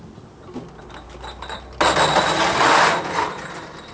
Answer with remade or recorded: recorded